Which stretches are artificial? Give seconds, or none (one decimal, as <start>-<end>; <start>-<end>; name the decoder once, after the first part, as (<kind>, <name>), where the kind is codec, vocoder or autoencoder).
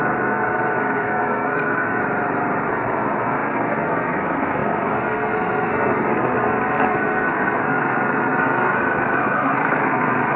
0.0-2.0 (codec, SNAC); 2.7-10.4